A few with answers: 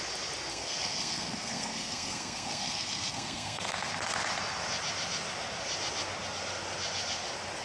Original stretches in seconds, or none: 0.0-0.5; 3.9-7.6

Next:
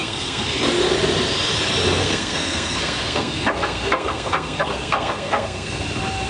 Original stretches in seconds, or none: 0.6-2.0; 5.8-6.3

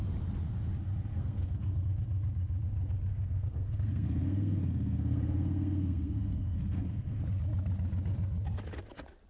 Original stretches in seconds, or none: 0.0-1.1; 1.8-3.1; 7.2-9.3

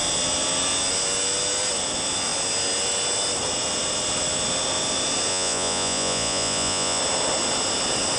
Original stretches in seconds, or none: 0.0-5.3; 7.0-8.2

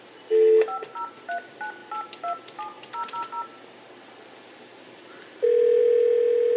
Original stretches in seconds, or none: 0.0-6.6